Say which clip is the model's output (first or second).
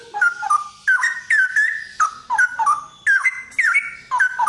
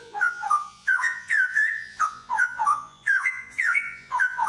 second